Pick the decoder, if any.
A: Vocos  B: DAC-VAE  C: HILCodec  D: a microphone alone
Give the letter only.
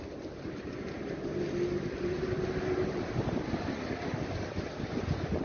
D